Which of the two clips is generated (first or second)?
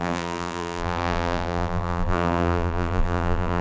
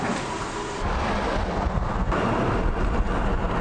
first